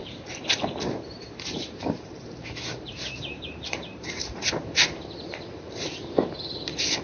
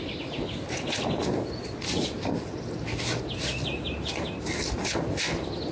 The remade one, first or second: first